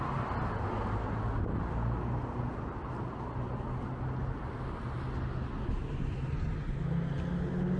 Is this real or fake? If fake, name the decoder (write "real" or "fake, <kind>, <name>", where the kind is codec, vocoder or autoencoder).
real